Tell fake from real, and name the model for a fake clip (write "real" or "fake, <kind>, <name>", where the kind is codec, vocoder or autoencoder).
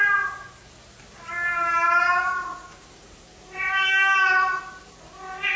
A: real